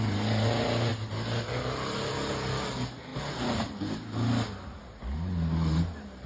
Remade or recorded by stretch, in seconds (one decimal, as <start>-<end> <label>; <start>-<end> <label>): 0.0-6.3 recorded